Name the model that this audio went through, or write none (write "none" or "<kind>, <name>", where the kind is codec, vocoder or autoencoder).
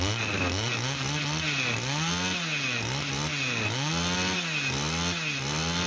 none